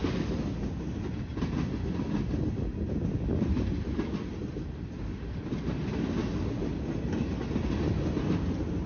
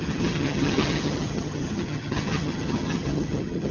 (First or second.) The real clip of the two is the first